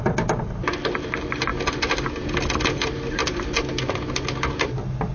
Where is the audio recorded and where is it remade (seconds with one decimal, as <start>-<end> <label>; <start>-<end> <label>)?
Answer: 0.0-5.1 recorded